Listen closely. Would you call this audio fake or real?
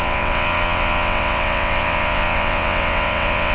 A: fake